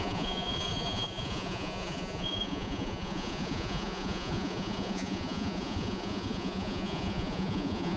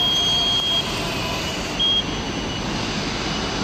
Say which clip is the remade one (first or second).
first